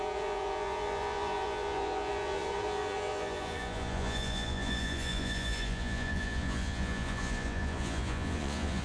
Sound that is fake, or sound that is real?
fake